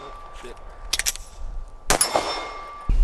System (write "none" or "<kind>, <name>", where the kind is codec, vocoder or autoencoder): none